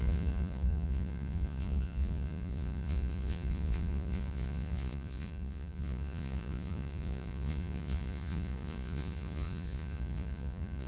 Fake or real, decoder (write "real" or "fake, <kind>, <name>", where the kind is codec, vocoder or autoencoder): fake, vocoder, Vocos